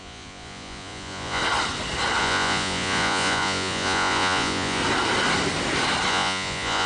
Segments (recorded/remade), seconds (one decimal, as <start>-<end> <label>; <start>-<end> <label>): 0.0-1.4 remade; 1.4-2.2 recorded; 2.2-4.8 remade; 4.8-6.1 recorded; 6.1-6.9 remade